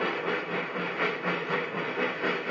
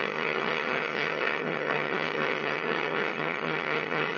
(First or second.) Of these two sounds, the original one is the first